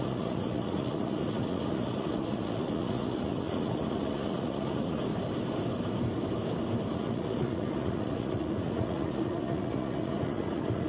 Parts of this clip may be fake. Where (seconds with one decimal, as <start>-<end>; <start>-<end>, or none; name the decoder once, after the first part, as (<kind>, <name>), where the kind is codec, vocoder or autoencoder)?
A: 0.0-5.0 (vocoder, Vocos); 6.9-10.9